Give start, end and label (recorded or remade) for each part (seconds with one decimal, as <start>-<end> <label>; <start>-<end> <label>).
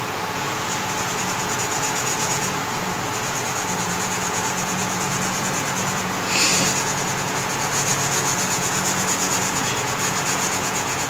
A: 0.0-11.1 remade